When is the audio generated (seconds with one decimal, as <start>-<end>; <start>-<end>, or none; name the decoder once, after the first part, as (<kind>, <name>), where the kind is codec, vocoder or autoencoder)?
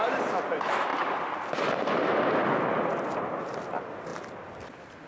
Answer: none